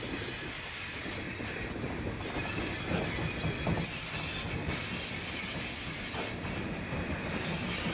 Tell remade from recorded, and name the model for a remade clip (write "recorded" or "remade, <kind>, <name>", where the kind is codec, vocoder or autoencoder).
recorded